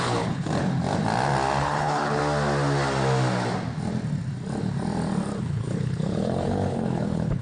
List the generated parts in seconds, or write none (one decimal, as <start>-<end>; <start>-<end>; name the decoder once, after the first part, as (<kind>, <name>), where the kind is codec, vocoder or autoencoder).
0.0-0.5 (codec, HILCodec); 1.6-2.2; 5.4-7.4